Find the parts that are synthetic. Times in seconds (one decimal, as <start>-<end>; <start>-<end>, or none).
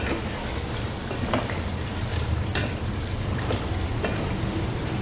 1.0-1.9; 2.5-3.9